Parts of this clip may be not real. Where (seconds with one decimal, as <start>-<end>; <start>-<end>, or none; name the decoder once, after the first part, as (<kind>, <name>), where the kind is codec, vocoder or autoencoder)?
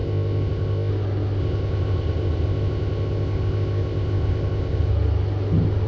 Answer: 0.0-0.9 (codec, ZipCodec); 1.4-4.9